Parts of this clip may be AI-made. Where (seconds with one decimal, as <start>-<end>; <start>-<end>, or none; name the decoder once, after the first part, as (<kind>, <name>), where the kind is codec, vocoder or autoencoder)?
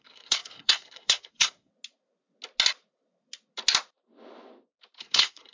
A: 0.0-1.7 (codec, SNAC); 5.0-5.5